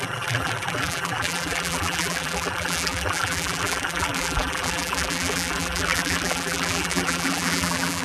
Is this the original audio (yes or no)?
no